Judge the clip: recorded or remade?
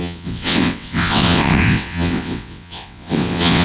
remade